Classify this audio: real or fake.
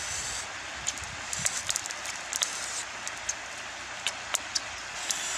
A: real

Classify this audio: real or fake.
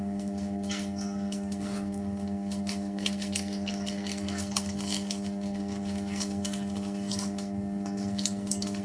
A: fake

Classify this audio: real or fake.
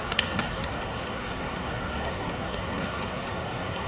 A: fake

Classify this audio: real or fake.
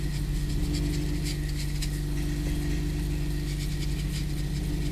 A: real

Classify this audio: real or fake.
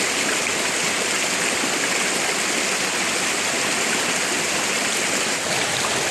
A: real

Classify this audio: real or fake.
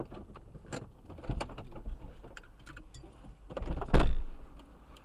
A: real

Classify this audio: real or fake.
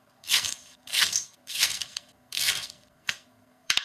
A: fake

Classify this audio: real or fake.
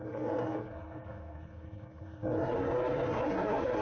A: fake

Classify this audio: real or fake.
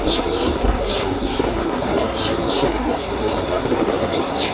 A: fake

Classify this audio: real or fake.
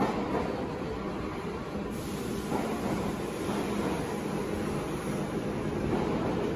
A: real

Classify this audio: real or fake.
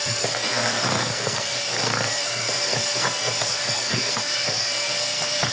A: fake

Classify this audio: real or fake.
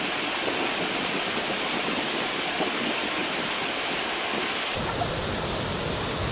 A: real